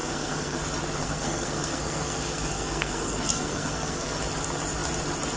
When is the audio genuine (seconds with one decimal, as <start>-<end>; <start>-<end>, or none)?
0.6-1.0; 4.2-5.4